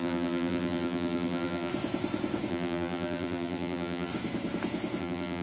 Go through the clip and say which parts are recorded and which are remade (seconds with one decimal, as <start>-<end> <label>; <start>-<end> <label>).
0.0-1.7 remade; 1.7-2.5 recorded; 2.5-4.1 remade; 4.1-5.0 recorded; 5.0-5.4 remade